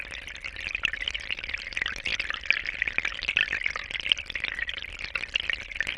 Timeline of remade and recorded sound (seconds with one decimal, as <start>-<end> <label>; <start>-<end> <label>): 0.0-6.0 recorded